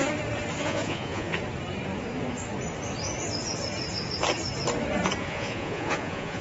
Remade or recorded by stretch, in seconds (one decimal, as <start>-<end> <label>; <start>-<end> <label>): 0.0-0.6 recorded; 0.6-1.4 remade; 1.4-5.2 recorded; 5.2-6.4 remade

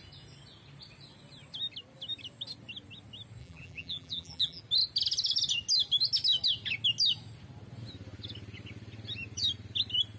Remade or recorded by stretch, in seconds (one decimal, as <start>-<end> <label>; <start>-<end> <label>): 0.0-3.4 recorded; 3.4-4.6 remade; 4.6-10.2 recorded

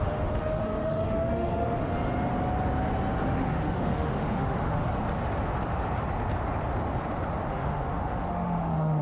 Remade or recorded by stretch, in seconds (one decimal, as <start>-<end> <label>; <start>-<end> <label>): 0.0-1.9 remade; 1.9-3.2 recorded; 3.2-4.8 remade; 4.8-7.5 recorded; 7.5-9.0 remade

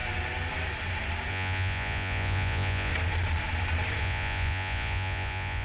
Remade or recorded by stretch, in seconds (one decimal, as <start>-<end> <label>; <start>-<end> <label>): 0.0-1.3 recorded; 1.3-2.9 remade; 2.9-4.0 recorded; 4.0-5.6 remade

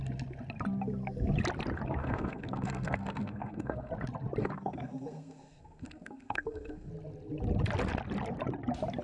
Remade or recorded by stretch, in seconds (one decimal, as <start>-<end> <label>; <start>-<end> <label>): 0.0-2.0 recorded; 2.0-3.9 remade; 3.9-4.4 recorded; 4.4-6.9 remade; 6.9-9.0 recorded